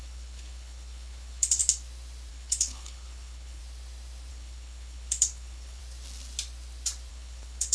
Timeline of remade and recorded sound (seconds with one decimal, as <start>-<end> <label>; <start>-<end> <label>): 0.0-1.6 remade; 1.6-2.3 recorded; 2.3-3.6 remade; 3.6-4.3 recorded; 4.3-5.8 remade; 5.8-7.1 recorded; 7.1-7.7 remade

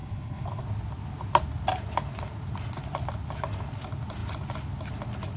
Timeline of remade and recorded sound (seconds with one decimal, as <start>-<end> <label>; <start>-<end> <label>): 0.0-0.6 remade; 0.6-5.4 recorded

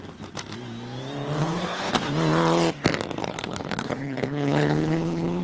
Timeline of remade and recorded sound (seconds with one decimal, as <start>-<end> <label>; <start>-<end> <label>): 0.0-1.4 recorded; 1.4-1.9 remade; 1.9-3.2 recorded; 3.2-5.4 remade